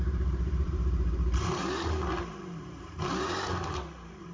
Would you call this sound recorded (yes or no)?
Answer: no